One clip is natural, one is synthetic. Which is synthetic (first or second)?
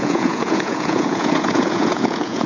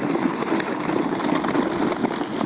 first